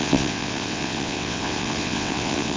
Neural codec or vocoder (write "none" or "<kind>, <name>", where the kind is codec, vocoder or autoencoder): vocoder, WaveNeXt